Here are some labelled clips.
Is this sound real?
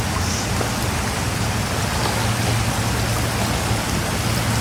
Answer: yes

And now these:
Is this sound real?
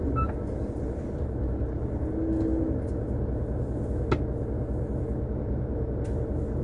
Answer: yes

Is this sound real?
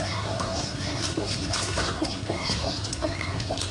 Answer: no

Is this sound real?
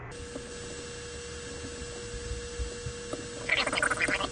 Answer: yes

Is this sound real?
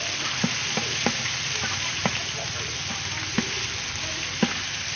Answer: yes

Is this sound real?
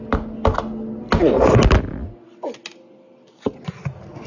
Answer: yes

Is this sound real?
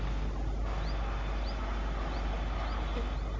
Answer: yes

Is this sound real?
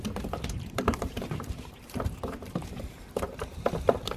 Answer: no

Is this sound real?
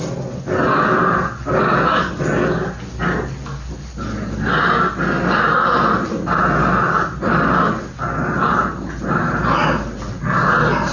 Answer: yes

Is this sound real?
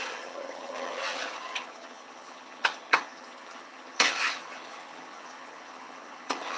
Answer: no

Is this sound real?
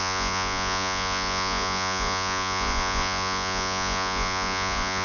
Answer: no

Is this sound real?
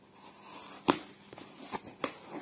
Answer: yes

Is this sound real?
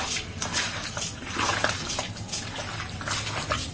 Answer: yes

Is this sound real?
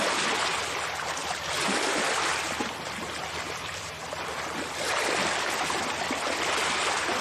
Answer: yes